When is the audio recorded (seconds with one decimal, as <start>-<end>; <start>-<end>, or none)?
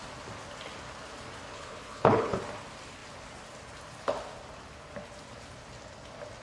0.0-1.5; 2.4-6.4